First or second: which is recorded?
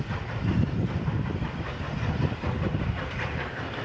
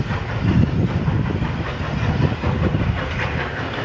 second